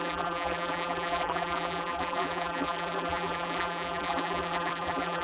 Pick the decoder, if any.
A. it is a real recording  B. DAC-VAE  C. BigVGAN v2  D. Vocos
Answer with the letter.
C